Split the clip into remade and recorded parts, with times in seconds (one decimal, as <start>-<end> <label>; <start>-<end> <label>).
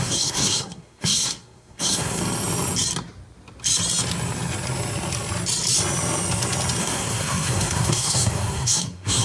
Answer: 0.0-2.2 remade; 2.2-6.8 recorded; 6.8-9.2 remade